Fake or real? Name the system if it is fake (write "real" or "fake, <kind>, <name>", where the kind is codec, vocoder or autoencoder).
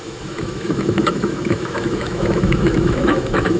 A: fake, autoencoder, DAC-VAE